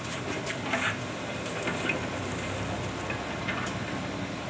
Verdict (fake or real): real